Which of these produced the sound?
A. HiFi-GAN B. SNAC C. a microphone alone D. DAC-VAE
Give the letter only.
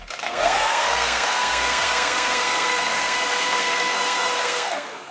B